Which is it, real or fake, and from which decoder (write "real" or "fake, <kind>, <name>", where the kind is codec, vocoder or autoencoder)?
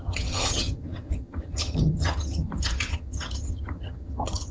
fake, vocoder, HiFi-GAN